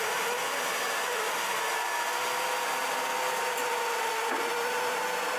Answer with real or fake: real